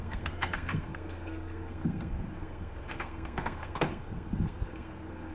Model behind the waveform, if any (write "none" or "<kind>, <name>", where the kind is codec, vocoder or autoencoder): codec, SNAC